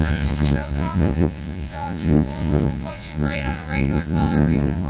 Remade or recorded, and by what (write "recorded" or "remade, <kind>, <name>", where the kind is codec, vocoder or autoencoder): remade, vocoder, Vocos